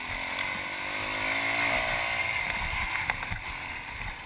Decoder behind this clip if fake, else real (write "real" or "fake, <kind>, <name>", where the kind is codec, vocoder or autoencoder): real